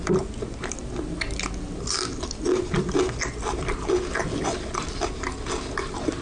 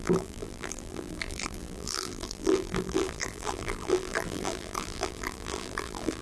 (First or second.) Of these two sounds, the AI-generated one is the second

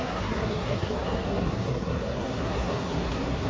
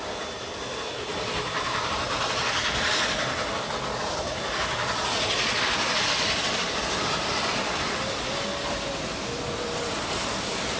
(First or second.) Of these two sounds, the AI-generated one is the first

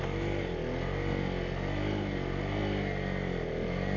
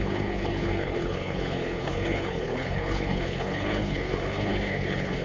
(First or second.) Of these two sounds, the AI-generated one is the second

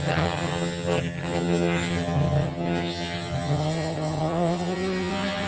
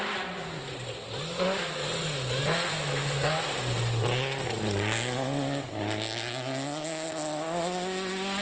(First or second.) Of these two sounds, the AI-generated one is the first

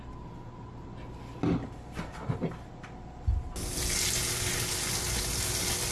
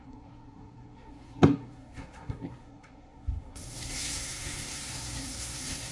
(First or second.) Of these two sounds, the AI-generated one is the second